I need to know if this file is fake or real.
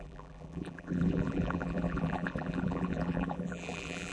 fake